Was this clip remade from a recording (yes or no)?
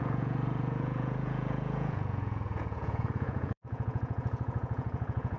yes